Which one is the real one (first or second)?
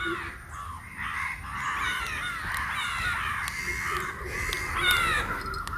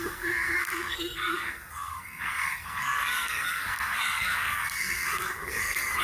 first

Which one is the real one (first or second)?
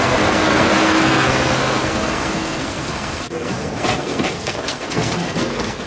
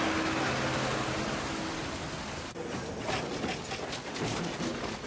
second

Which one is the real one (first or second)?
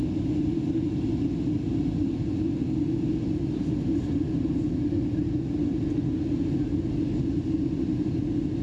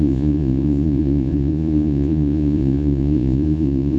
first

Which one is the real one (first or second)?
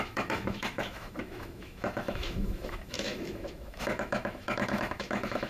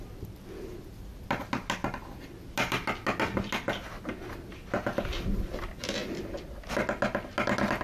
second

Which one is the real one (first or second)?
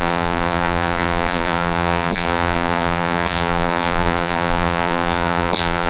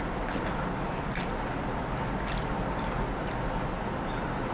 second